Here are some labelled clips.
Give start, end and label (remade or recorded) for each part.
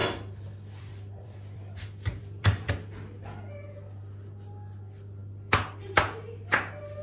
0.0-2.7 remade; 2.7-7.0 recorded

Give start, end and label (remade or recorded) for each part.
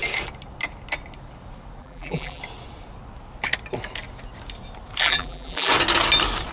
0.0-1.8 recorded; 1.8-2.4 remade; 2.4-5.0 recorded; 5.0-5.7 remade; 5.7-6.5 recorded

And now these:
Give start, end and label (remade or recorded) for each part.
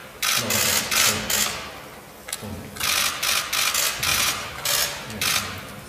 0.0-4.1 recorded; 4.1-4.7 remade; 4.7-5.9 recorded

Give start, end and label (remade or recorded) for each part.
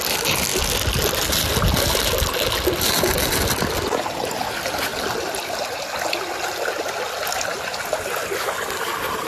0.0-9.3 recorded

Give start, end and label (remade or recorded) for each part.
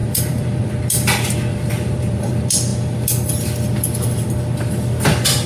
0.0-0.7 remade; 0.7-1.5 recorded; 1.5-2.3 remade; 2.3-5.5 recorded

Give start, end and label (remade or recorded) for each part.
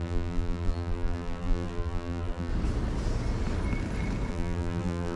0.0-2.5 remade; 2.5-4.3 recorded; 4.3-5.2 remade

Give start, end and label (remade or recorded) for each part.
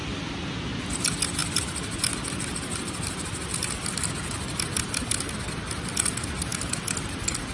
0.0-1.4 recorded; 1.4-4.5 remade; 4.5-6.5 recorded; 6.5-7.5 remade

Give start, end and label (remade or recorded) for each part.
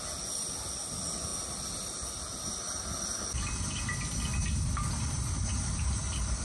0.0-4.3 recorded; 4.3-6.4 remade